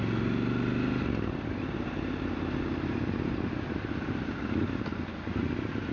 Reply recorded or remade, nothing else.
recorded